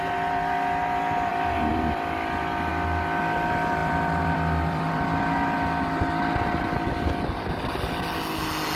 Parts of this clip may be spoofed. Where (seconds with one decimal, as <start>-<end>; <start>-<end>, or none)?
1.3-2.7; 3.8-5.2